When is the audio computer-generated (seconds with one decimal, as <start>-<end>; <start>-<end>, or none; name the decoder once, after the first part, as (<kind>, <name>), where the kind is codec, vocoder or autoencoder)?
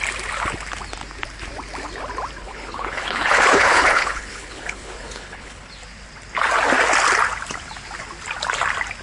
2.4-5.7 (codec, HILCodec)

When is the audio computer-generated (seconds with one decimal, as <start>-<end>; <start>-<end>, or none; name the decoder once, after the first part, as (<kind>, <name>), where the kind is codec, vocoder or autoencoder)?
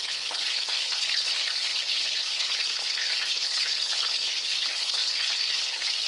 0.0-6.1 (codec, HILCodec)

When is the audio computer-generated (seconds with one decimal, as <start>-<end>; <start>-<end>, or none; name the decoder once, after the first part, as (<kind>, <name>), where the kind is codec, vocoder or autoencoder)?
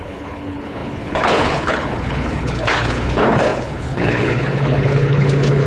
0.0-5.7 (codec, HILCodec)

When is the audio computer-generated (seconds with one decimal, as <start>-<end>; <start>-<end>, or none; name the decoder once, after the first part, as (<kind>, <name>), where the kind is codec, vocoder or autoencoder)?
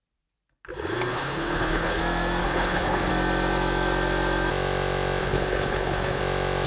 1.1-2.0 (codec, HILCodec); 2.4-3.1; 5.2-6.2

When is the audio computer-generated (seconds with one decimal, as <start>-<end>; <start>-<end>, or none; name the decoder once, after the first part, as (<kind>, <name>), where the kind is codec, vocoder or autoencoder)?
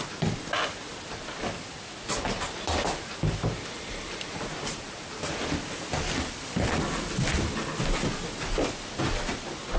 none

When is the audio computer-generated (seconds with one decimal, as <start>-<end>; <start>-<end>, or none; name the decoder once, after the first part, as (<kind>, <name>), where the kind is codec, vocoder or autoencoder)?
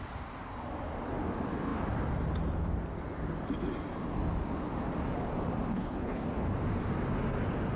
5.7-6.2 (codec, HILCodec)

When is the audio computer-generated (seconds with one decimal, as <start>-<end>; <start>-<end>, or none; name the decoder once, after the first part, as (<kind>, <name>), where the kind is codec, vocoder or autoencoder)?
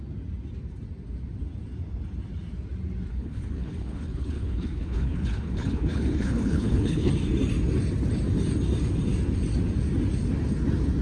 3.1-7.1 (codec, HILCodec)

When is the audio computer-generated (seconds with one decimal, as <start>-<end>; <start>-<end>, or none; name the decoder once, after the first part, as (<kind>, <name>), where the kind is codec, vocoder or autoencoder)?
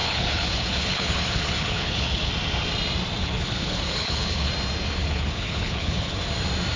0.0-2.3 (codec, HILCodec); 3.2-4.5; 5.0-6.2